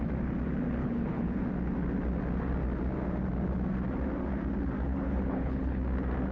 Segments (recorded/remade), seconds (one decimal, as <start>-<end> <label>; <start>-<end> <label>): 0.0-0.8 recorded; 0.8-1.4 remade; 1.4-4.9 recorded; 4.9-5.8 remade; 5.8-6.3 recorded